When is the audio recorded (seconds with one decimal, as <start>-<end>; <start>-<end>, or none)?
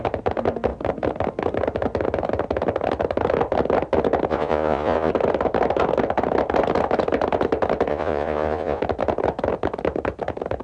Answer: 0.0-4.3; 5.1-7.9; 8.8-10.6